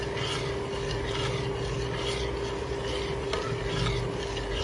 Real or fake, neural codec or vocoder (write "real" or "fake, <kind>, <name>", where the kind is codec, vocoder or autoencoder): real